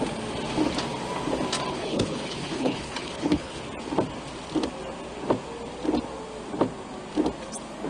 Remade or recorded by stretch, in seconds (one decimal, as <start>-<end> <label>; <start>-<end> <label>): 0.0-1.7 recorded; 1.7-3.6 remade; 3.6-7.9 recorded